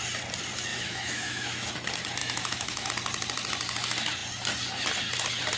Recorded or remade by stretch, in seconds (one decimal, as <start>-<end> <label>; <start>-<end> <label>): 0.0-0.7 recorded; 0.7-1.7 remade; 1.7-2.2 recorded; 2.2-2.9 remade; 2.9-5.6 recorded